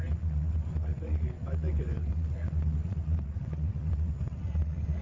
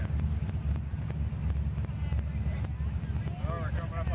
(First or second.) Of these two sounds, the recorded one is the second